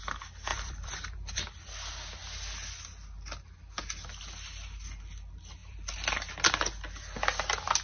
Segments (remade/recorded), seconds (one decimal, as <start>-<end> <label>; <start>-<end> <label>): 0.0-0.5 recorded; 0.5-1.4 remade; 1.4-5.6 recorded; 5.6-6.3 remade; 6.3-7.8 recorded